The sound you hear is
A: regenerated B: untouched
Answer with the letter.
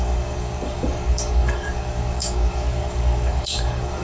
A